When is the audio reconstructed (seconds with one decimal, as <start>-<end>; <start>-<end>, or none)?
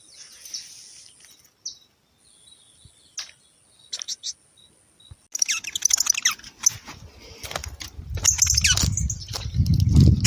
none